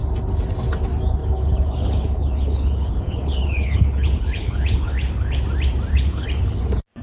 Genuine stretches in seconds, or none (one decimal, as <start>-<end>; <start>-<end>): 0.0-1.2; 5.4-5.9; 6.6-7.0